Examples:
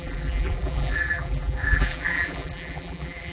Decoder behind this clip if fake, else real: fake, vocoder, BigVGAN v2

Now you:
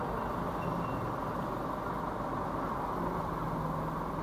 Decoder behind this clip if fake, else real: real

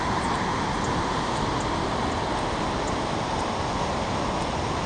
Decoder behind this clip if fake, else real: real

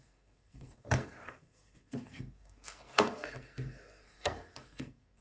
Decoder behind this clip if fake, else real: fake, codec, SNAC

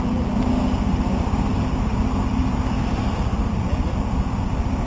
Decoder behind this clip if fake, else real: real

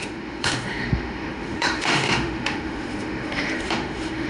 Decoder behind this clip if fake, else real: fake, autoencoder, DAC-VAE